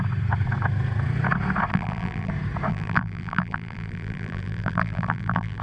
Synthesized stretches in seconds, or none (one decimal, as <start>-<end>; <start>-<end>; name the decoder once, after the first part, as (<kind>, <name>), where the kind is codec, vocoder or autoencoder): 1.7-2.3 (vocoder, BigVGAN v2); 2.7-5.6